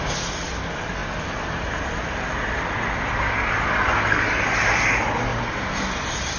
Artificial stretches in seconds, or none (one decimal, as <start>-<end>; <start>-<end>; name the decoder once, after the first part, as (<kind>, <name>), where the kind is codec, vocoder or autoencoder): 5.3-6.4 (vocoder, BigVGAN v2)